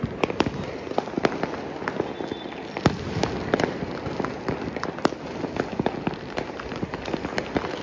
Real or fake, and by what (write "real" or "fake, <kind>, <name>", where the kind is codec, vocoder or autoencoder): real